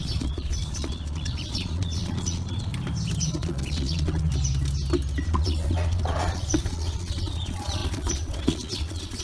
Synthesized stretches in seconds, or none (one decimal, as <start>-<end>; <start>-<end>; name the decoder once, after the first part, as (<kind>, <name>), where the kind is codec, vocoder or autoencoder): 0.0-2.7 (vocoder, Vocos); 3.2-4.3; 5.2-9.2